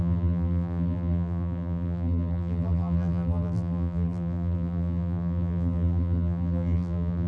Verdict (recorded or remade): remade